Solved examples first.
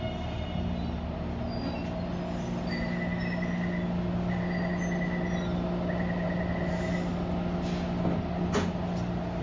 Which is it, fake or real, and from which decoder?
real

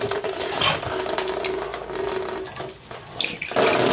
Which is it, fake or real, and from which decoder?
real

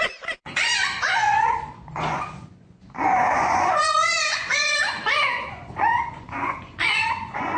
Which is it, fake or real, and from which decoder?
fake, vocoder, Vocos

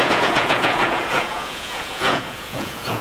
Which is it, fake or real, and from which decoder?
fake, vocoder, Vocos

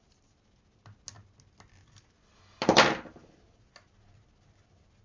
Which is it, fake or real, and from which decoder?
real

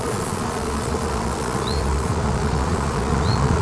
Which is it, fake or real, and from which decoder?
fake, vocoder, Vocos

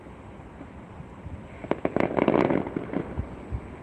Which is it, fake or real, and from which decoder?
real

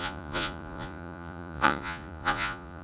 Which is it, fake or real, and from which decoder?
fake, vocoder, Vocos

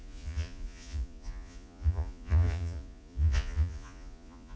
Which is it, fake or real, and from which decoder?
fake, vocoder, Vocos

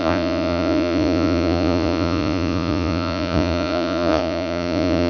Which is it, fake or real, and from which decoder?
fake, vocoder, Vocos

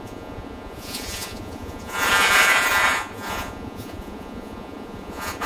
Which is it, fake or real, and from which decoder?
fake, vocoder, Vocos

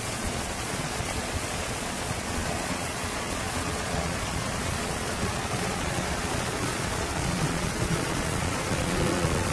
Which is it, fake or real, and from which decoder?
fake, vocoder, Vocos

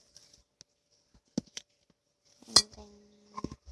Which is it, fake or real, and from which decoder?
real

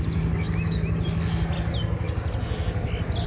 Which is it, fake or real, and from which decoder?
real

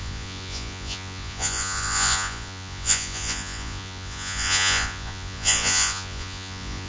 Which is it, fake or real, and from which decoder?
fake, vocoder, Vocos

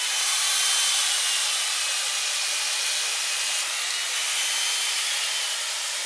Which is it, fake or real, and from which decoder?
real